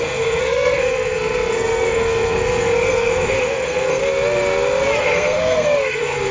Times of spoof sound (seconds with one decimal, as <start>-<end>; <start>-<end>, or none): 0.0-4.0; 5.0-6.3